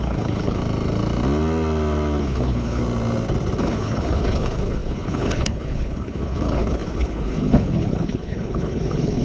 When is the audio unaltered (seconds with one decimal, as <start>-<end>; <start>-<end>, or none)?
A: 0.6-2.2; 2.8-3.6